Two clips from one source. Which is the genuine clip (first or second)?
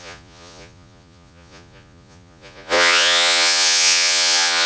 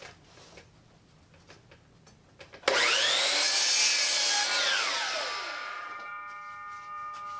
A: second